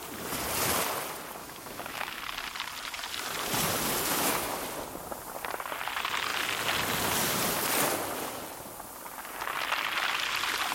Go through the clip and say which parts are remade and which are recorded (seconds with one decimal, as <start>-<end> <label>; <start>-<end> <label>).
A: 0.0-1.4 recorded; 1.4-2.2 remade; 2.2-4.1 recorded; 4.1-4.6 remade; 4.6-10.7 recorded